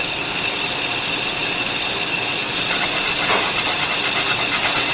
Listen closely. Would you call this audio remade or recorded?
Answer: recorded